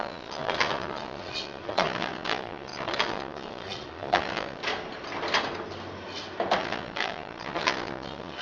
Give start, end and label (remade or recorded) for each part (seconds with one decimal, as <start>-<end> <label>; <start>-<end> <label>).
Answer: 0.0-4.6 remade; 4.6-6.6 recorded; 6.6-8.4 remade